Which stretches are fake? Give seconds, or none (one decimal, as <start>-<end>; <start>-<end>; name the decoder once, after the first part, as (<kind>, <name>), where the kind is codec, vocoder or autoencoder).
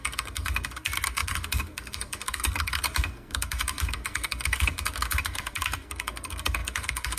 0.0-7.2 (codec, SNAC)